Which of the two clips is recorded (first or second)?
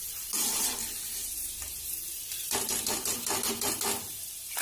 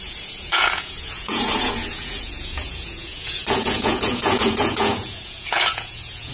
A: first